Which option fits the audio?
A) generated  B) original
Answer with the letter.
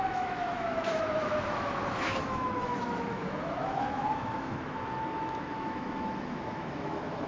A